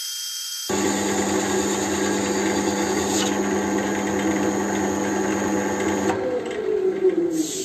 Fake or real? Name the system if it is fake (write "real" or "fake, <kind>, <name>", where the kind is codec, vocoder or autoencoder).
real